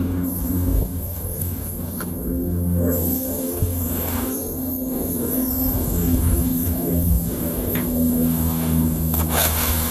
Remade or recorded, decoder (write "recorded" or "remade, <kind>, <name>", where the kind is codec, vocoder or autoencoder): remade, codec, DAC